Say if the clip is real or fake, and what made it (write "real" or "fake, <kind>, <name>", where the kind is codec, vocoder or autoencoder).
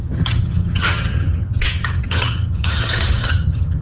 fake, vocoder, HiFi-GAN